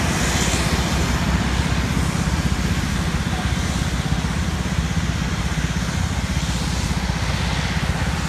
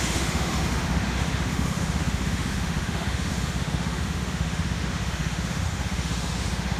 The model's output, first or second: second